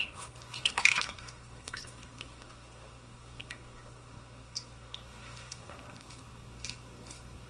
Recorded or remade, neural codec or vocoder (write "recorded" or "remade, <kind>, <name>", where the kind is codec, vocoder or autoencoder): remade, codec, SNAC